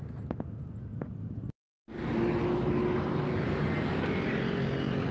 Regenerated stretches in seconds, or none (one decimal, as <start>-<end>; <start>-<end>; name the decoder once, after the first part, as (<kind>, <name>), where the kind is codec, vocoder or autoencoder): none